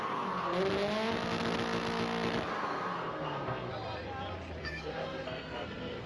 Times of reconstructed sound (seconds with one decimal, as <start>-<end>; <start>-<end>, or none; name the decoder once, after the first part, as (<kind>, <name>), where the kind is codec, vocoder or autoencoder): 0.0-0.5 (codec, SNAC); 2.6-3.7; 4.6-6.1